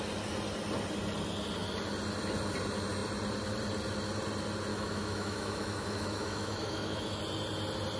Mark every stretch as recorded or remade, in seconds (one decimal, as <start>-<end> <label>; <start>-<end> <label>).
0.0-4.7 recorded; 4.7-7.2 remade; 7.2-8.0 recorded